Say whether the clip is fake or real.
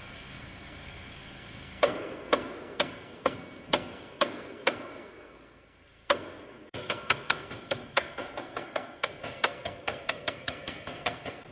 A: fake